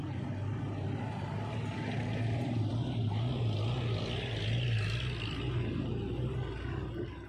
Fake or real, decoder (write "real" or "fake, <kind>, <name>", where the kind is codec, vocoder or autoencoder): real